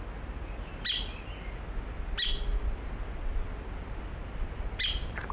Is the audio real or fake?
real